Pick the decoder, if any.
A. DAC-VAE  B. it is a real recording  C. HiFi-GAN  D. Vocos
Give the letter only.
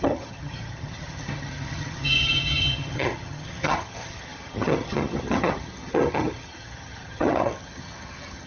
C